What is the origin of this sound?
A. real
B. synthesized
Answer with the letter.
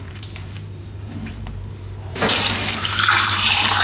B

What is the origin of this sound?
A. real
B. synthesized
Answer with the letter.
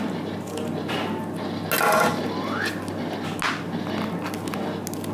A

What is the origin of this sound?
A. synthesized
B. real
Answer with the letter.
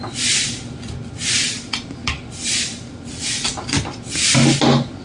B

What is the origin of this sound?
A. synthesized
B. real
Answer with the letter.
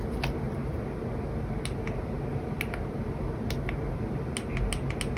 B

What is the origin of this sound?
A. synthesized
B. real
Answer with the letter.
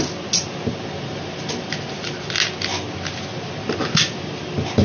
B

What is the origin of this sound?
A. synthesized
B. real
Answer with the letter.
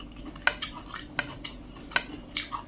B